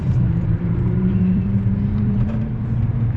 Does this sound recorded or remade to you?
remade